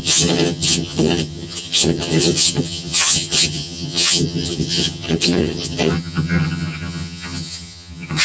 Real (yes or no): no